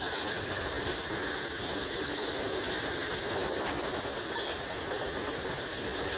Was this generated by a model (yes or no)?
no